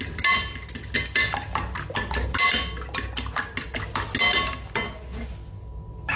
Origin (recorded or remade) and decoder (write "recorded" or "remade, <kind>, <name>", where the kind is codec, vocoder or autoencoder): recorded